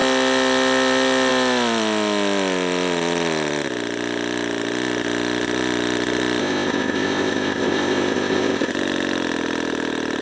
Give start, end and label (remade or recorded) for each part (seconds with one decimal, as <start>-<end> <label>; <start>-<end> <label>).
0.0-6.4 recorded; 6.4-8.7 remade; 8.7-10.2 recorded